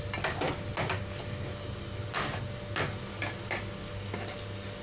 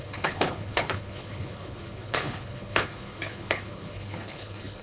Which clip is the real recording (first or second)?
first